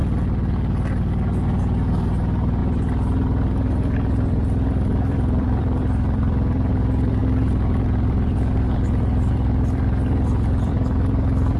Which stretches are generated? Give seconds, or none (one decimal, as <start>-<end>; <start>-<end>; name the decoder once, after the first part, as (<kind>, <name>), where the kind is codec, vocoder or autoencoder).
1.6-11.6 (vocoder, BigVGAN v2)